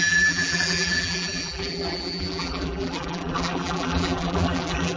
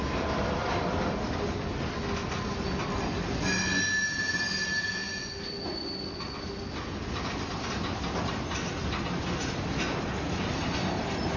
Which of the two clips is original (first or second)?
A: second